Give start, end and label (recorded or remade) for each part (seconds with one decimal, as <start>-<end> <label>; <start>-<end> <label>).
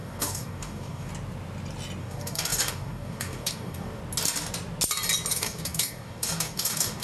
0.0-1.1 remade; 1.1-2.0 recorded; 2.0-4.0 remade; 4.0-5.3 recorded; 5.3-7.0 remade